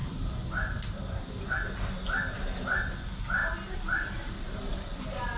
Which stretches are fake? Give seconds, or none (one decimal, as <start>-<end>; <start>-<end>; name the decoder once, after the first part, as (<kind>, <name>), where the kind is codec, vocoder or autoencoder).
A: none